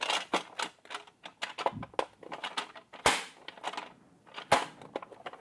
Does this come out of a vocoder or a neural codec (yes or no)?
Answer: no